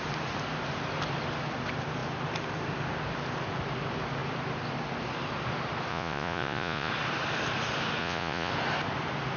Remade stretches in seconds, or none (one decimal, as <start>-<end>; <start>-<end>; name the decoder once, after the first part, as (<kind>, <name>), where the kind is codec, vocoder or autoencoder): 5.9-6.9 (vocoder, Vocos); 8.0-8.5